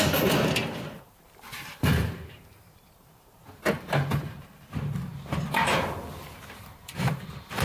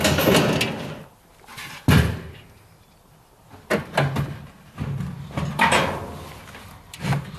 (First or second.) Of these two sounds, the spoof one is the first